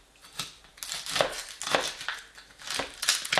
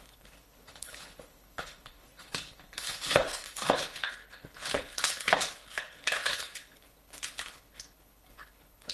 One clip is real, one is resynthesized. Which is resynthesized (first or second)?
second